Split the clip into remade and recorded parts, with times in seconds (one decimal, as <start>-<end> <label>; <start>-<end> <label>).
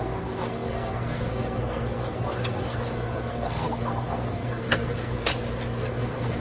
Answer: 0.0-5.3 remade; 5.3-5.8 recorded; 5.8-6.4 remade